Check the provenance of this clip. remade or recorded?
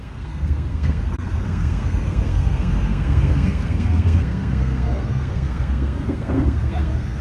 remade